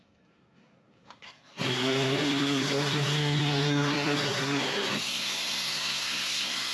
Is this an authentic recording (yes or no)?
no